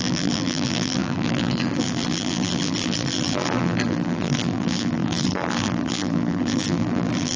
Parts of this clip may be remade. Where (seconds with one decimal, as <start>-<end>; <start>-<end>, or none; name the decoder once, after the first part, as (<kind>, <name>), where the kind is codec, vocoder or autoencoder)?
0.0-7.4 (vocoder, BigVGAN v2)